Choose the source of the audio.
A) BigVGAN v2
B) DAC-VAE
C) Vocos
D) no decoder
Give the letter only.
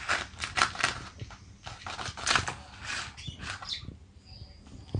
D